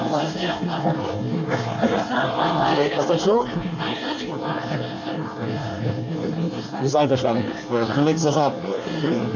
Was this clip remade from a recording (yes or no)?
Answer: yes